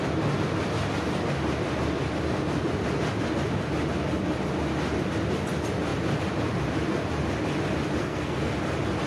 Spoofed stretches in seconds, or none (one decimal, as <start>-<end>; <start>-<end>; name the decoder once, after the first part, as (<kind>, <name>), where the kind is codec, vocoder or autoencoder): 8.0-8.5 (codec, SNAC)